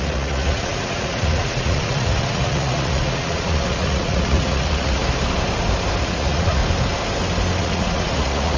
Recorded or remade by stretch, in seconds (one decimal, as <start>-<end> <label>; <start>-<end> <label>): 0.0-5.0 remade; 5.0-6.0 recorded; 6.0-6.6 remade; 6.6-7.6 recorded; 7.6-8.6 remade